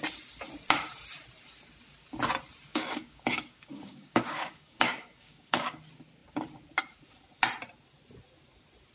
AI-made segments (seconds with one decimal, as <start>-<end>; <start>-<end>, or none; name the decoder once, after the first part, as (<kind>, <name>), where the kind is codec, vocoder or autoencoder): 2.7-5.8 (codec, DAC)

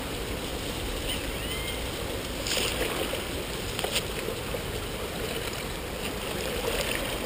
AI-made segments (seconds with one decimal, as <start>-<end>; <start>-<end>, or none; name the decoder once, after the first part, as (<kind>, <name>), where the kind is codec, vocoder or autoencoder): none

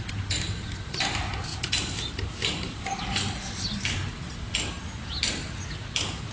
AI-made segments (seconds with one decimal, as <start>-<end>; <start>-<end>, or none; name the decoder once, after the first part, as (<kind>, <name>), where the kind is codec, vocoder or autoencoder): none

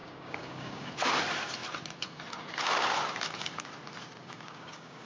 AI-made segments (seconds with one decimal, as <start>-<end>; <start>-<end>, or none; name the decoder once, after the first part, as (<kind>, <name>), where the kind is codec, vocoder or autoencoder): 0.0-0.9 (codec, DAC); 4.2-5.1

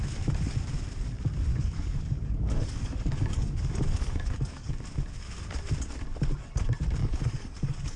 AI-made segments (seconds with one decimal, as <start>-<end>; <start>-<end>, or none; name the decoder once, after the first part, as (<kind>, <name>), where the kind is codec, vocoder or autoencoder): 1.5-4.7 (codec, DAC); 7.0-8.0

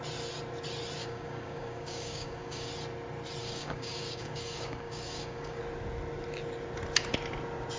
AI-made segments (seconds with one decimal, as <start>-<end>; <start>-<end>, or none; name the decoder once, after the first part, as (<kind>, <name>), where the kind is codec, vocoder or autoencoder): 1.0-2.7 (codec, DAC); 3.4-5.6